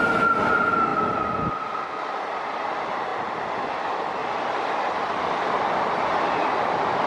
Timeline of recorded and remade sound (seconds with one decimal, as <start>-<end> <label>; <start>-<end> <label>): 0.0-7.1 recorded